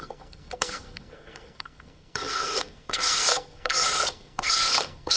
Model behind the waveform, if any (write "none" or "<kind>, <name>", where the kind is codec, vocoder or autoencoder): codec, SNAC